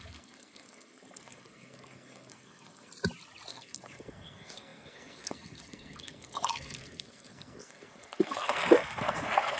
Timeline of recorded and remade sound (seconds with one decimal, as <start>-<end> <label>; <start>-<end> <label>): 0.0-2.9 remade; 2.9-3.5 recorded; 3.5-9.6 remade